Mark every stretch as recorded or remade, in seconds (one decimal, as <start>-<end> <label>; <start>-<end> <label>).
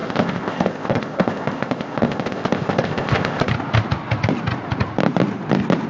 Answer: 0.0-3.5 remade; 3.5-5.9 recorded